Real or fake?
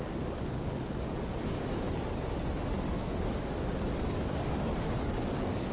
fake